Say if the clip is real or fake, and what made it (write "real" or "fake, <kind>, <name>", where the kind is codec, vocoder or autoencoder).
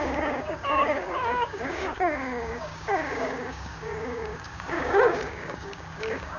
fake, codec, DAC